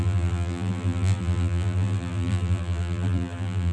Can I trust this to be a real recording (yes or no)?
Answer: no